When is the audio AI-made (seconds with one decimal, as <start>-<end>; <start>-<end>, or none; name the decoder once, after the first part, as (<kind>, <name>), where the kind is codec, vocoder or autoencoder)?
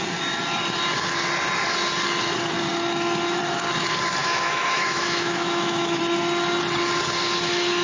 4.2-6.0 (autoencoder, DAC-VAE)